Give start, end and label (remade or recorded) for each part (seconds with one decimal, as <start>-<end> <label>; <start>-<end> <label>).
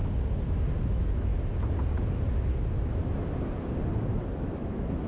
0.0-0.8 recorded; 0.8-1.3 remade; 1.3-4.4 recorded; 4.4-5.1 remade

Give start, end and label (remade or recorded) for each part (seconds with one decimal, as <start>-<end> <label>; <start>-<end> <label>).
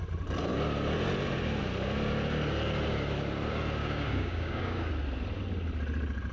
0.0-3.8 recorded; 3.8-4.9 remade; 4.9-6.3 recorded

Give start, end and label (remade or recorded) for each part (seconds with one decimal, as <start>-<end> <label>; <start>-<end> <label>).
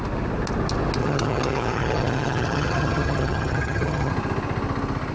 0.0-1.0 recorded; 1.0-4.1 remade; 4.1-5.1 recorded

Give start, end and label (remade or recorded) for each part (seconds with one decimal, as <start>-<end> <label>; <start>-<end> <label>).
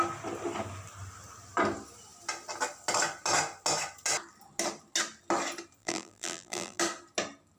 0.0-5.8 recorded; 5.8-6.8 remade; 6.8-7.6 recorded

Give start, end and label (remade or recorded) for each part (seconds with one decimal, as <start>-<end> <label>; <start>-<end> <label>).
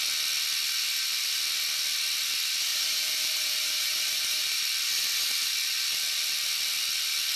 0.0-2.7 recorded; 2.7-4.6 remade; 4.6-7.4 recorded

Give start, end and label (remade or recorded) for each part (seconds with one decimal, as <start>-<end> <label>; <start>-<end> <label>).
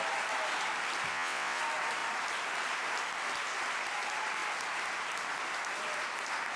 0.0-1.1 recorded; 1.1-1.6 remade; 1.6-6.6 recorded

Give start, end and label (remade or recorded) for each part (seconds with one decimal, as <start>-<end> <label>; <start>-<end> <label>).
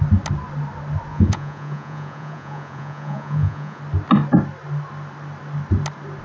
0.0-1.1 recorded; 1.1-3.8 remade; 3.8-6.2 recorded